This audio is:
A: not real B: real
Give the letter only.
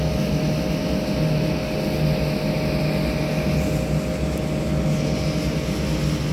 B